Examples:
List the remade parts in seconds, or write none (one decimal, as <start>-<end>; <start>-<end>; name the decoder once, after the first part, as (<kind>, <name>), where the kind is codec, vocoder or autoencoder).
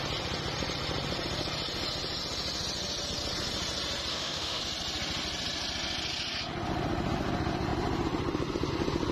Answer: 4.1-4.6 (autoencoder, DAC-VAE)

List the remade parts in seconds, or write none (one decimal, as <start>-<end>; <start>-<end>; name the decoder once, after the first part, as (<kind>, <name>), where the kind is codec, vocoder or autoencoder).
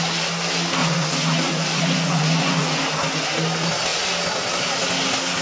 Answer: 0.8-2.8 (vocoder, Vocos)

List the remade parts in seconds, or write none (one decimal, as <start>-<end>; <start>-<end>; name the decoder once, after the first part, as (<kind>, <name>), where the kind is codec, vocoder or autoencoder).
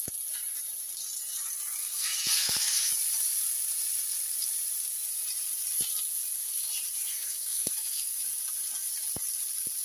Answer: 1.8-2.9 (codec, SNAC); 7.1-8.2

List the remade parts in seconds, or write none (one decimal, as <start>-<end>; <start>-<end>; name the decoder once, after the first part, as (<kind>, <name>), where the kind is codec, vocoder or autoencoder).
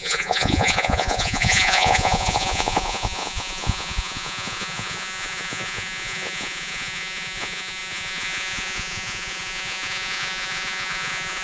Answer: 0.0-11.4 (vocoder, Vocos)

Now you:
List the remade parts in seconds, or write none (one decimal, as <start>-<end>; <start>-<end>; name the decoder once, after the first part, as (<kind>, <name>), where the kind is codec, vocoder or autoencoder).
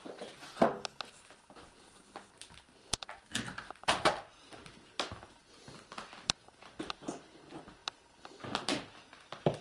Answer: none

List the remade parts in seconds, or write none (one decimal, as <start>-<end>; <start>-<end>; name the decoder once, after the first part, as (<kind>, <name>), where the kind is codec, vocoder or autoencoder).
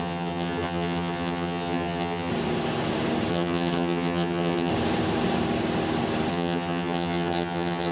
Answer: 0.0-2.3 (vocoder, HiFi-GAN); 3.3-4.7; 6.3-7.9